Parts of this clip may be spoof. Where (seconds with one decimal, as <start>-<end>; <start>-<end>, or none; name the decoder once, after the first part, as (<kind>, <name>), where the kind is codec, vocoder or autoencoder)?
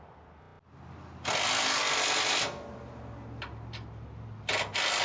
none